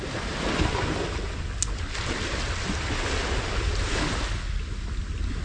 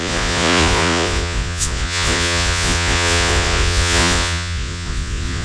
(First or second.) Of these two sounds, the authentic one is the first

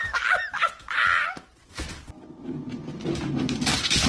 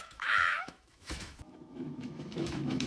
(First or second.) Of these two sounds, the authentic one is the first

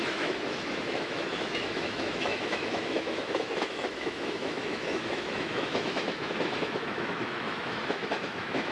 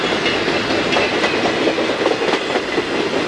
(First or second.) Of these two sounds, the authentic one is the second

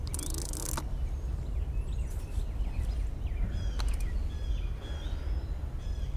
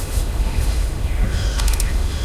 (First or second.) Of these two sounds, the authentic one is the first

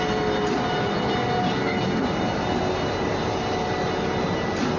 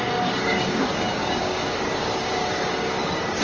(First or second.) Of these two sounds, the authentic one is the first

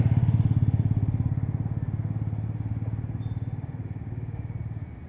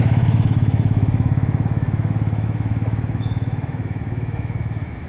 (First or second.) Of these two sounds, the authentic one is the first